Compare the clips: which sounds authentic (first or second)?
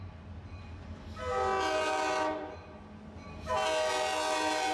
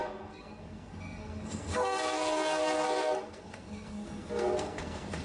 first